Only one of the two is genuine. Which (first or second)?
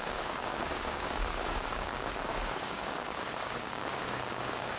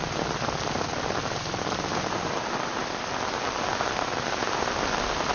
second